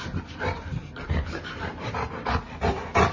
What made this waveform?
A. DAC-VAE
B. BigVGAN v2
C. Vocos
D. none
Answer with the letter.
D